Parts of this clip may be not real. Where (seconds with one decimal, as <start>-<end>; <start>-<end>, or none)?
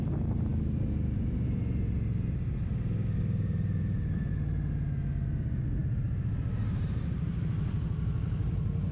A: none